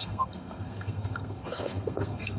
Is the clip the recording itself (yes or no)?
no